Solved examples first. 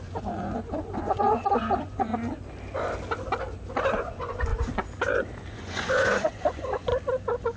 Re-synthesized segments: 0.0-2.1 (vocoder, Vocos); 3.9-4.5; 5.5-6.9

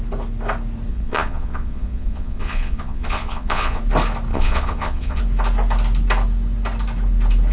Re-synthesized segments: 0.9-3.8 (vocoder, Vocos); 4.3-5.2

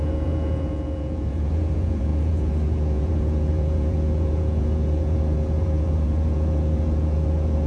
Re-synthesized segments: 0.0-7.7 (vocoder, Vocos)

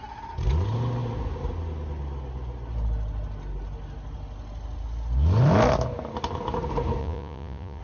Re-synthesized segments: 7.0-7.8 (vocoder, Vocos)

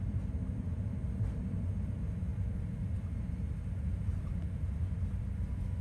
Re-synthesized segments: none

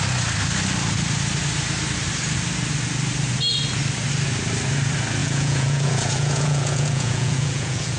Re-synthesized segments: 5.2-8.0 (vocoder, Vocos)

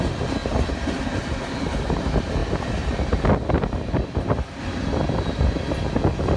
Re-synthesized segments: none

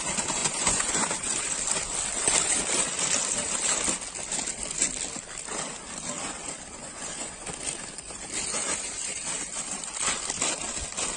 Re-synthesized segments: 0.4-1.1 (vocoder, Vocos); 6.8-7.5